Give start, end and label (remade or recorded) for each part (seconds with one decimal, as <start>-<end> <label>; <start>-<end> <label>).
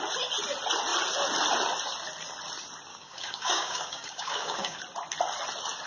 0.0-2.9 recorded; 2.9-4.8 remade; 4.8-5.9 recorded